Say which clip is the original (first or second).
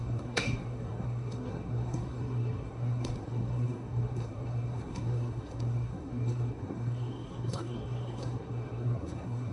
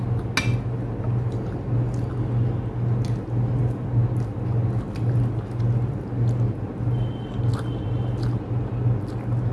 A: second